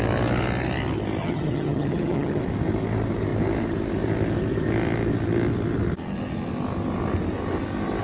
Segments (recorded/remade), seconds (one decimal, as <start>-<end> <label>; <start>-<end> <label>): 0.0-1.2 recorded; 1.2-2.4 remade; 2.4-8.0 recorded